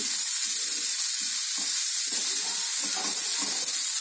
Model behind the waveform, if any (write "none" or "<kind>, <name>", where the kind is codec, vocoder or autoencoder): none